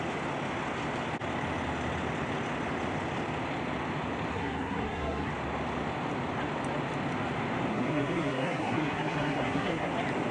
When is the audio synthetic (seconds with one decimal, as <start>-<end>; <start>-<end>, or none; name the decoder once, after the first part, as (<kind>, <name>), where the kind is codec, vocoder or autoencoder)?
4.3-5.3 (codec, SNAC); 7.7-9.9